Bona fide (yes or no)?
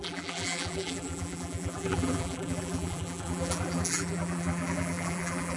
no